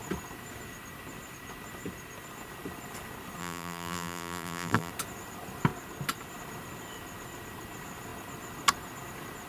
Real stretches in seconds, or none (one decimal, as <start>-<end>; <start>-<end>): 0.0-3.4; 4.9-9.5